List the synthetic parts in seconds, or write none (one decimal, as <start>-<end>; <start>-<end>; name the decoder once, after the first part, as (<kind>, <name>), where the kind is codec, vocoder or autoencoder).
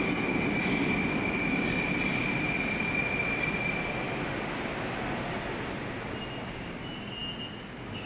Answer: none